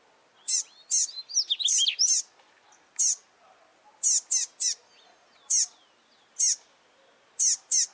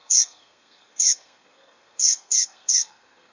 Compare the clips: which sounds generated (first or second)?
second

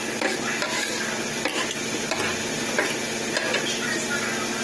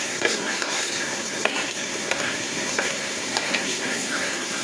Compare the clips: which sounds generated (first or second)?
second